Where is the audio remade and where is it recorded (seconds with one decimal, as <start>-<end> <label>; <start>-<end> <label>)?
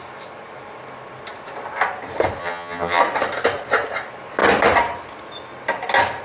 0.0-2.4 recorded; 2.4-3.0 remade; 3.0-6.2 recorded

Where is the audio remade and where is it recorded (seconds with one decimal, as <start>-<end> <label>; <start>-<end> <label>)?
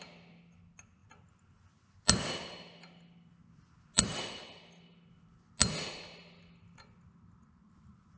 0.0-8.2 recorded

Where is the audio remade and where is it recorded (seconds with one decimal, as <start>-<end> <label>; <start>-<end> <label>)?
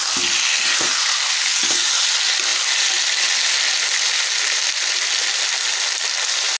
0.0-6.6 recorded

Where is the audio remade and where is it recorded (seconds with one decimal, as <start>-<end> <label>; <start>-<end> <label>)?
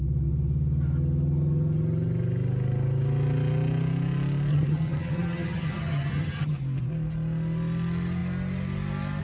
0.0-4.5 recorded; 4.5-6.5 remade; 6.5-9.2 recorded